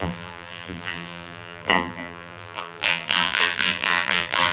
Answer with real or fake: fake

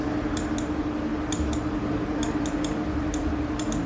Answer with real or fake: real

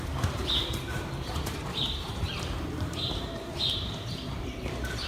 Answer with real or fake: fake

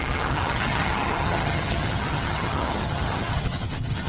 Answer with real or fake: fake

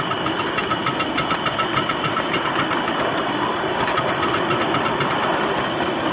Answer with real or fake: real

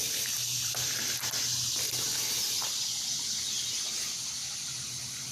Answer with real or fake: real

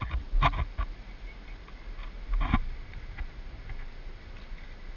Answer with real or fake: real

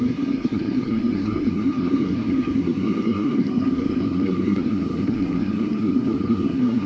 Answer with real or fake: fake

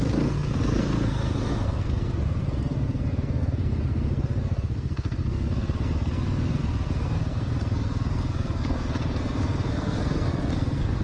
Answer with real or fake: fake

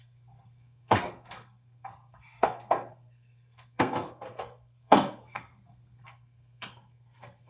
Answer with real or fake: fake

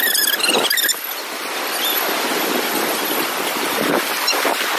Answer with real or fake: fake